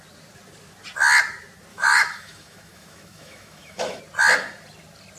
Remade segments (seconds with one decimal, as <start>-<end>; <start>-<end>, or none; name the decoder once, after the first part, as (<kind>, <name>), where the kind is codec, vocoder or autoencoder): 1.7-4.0 (autoencoder, DAC-VAE)

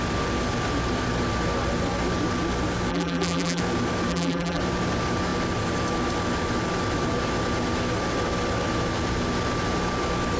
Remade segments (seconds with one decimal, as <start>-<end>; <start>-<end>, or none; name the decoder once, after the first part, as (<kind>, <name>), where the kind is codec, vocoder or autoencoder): 2.9-3.6 (vocoder, BigVGAN v2); 4.1-4.6

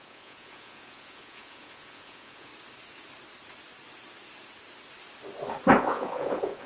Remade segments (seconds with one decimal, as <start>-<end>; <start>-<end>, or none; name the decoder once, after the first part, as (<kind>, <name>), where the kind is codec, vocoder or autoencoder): 0.0-2.5 (vocoder, Vocos); 5.8-6.7